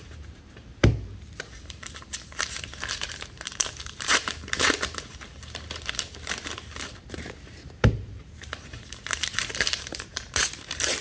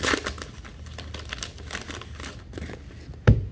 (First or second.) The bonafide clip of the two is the second